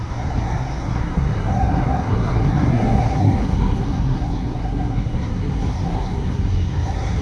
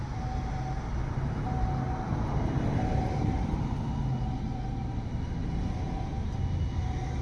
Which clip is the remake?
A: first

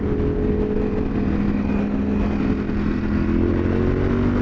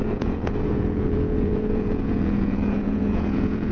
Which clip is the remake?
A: second